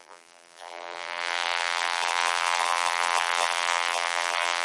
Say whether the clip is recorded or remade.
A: remade